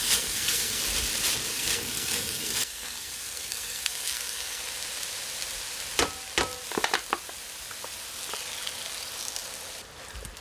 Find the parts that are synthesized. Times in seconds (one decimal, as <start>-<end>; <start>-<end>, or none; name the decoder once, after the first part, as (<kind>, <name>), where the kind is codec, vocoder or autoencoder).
0.0-0.8 (codec, SNAC); 1.5-4.6